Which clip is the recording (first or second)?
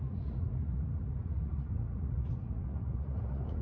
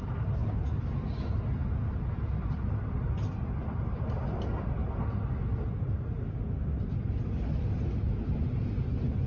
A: second